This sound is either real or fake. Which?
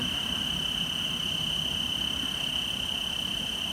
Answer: real